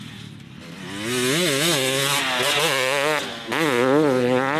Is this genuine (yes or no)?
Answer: yes